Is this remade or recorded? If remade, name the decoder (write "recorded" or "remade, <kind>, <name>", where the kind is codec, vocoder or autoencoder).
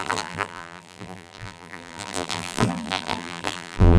remade, vocoder, BigVGAN v2